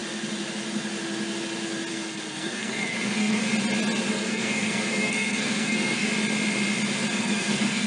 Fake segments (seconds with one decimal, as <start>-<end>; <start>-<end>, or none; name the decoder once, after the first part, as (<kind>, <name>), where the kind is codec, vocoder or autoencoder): 1.9-3.4 (codec, SNAC); 4.1-6.1; 7.1-7.9